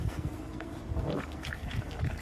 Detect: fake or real fake